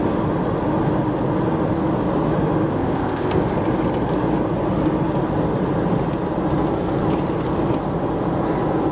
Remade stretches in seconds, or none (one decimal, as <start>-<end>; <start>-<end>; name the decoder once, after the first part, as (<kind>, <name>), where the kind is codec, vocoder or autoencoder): 2.7-3.4 (codec, ZipCodec)

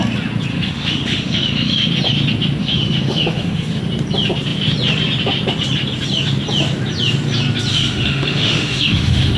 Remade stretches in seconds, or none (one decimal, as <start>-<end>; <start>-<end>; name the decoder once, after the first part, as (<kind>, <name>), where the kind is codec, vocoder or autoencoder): 0.5-1.9 (autoencoder, DAC-VAE); 2.6-3.8; 7.7-9.4

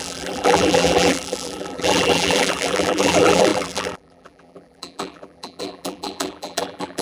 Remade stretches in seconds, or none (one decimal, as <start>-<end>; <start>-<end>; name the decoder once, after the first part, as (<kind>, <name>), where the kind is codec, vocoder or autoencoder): 0.0-7.0 (vocoder, BigVGAN v2)

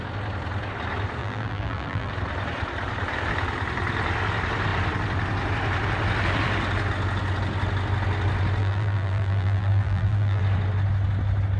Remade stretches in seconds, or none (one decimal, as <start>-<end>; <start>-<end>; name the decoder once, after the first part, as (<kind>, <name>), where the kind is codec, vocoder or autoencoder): 1.2-2.1 (vocoder, BigVGAN v2); 8.6-10.4

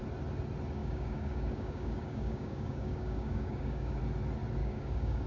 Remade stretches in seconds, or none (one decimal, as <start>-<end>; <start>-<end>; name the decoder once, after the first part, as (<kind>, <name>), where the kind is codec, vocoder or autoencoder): 0.8-4.0 (codec, DAC); 4.6-5.3

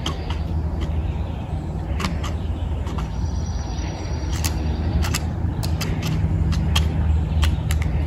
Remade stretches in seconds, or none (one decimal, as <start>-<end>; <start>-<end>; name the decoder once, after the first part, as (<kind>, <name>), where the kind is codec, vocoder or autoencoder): 1.0-5.5 (vocoder, BigVGAN v2)

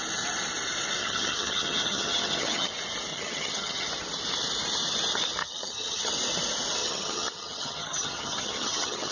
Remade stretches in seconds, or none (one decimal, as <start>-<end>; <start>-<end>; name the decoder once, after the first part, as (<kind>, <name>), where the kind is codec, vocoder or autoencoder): 1.0-2.7 (vocoder, HiFi-GAN); 3.1-3.9; 5.4-6.1; 6.8-9.1